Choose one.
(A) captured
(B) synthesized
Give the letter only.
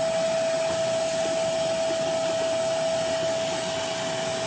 A